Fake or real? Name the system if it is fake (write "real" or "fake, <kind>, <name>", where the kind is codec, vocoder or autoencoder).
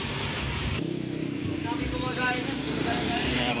fake, vocoder, BigVGAN v2